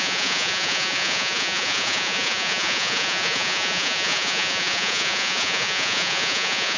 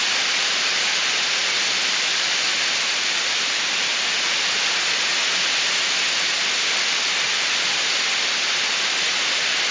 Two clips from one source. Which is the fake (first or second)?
first